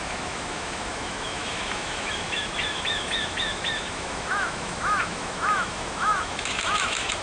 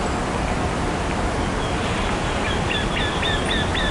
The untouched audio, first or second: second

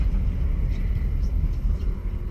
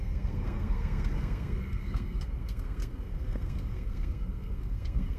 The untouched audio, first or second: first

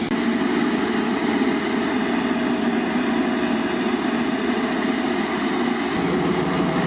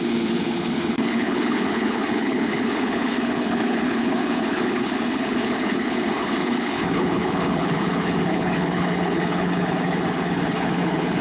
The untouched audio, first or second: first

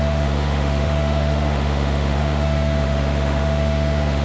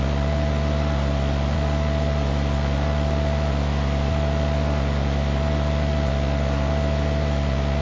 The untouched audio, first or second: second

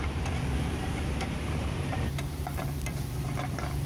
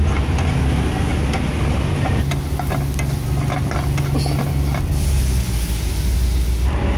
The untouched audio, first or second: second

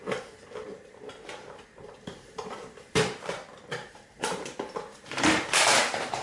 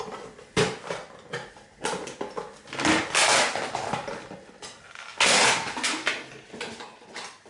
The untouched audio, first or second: second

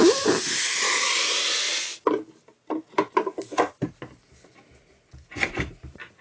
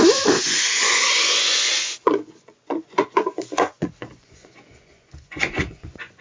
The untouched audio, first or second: first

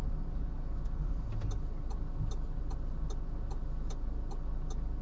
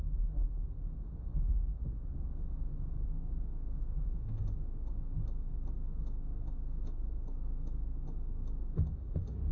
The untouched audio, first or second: first